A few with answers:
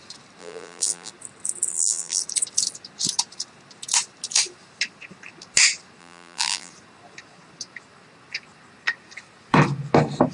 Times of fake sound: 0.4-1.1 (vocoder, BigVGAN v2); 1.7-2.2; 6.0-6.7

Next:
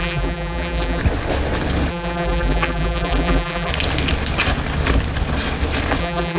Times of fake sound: 0.0-1.0 (vocoder, BigVGAN v2); 1.9-3.7; 6.0-6.4

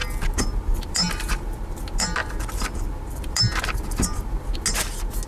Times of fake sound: none

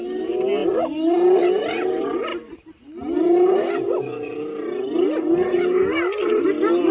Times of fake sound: none

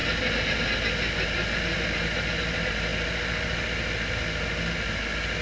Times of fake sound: none

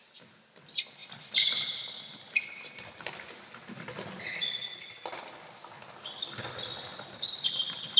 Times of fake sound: 1.0-2.9 (vocoder, BigVGAN v2); 6.9-8.0